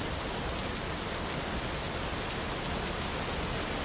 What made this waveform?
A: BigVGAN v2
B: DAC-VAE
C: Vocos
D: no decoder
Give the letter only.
D